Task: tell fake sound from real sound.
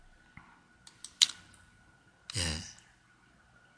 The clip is real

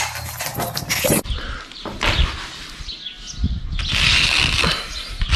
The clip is real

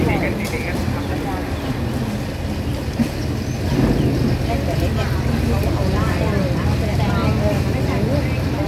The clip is real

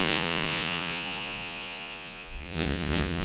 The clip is fake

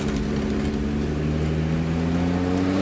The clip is real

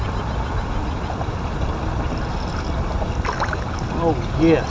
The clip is real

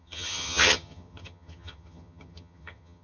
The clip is fake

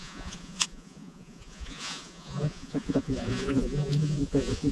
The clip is fake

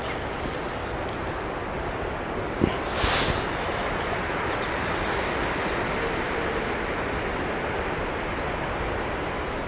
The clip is real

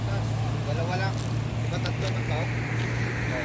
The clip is real